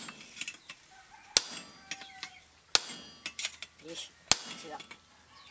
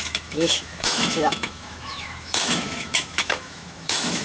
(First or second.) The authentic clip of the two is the first